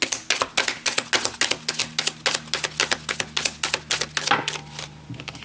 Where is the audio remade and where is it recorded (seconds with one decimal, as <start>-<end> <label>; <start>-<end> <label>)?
0.0-5.4 recorded